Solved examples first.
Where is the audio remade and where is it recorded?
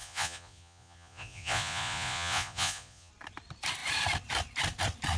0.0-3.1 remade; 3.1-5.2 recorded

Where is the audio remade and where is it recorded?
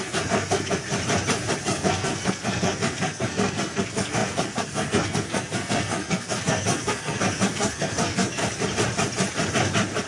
0.0-0.8 remade; 0.8-1.6 recorded; 1.6-8.4 remade; 8.4-10.1 recorded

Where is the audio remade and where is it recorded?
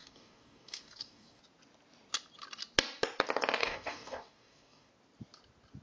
0.0-1.4 remade; 1.4-3.6 recorded; 3.6-4.9 remade; 4.9-5.8 recorded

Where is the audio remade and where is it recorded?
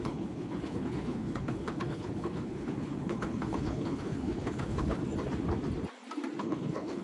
0.0-5.0 remade; 5.0-6.4 recorded; 6.4-7.0 remade